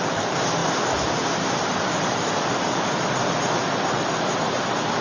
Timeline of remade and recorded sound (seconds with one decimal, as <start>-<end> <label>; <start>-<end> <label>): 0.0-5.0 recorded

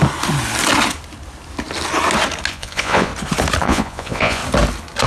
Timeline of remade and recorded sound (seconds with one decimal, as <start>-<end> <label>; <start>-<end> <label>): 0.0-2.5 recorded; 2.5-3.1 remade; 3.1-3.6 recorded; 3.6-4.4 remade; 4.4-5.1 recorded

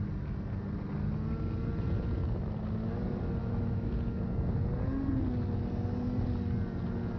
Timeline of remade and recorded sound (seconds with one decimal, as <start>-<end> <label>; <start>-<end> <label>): 0.0-3.4 recorded; 3.4-3.9 remade; 3.9-7.2 recorded

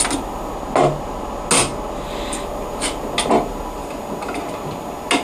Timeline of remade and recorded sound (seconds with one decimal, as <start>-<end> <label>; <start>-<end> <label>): 0.0-5.2 recorded

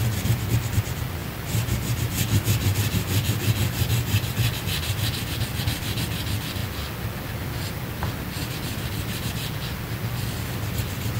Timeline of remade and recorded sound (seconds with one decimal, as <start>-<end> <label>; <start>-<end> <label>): 0.0-11.2 recorded

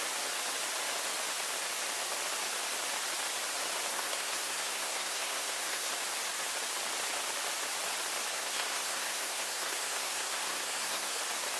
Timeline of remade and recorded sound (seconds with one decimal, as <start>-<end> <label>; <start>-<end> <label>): 0.0-3.9 recorded; 3.9-5.9 remade; 5.9-8.3 recorded; 8.3-11.2 remade; 11.2-11.6 recorded